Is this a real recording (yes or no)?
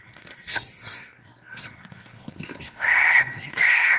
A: no